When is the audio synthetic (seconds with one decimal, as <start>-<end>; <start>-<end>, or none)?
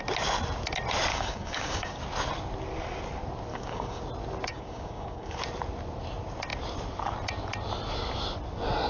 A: 1.1-2.0; 3.5-4.0; 4.5-5.4